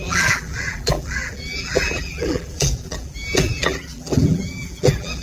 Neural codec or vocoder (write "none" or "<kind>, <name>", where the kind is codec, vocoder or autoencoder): vocoder, BigVGAN v2